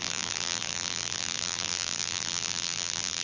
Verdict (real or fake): fake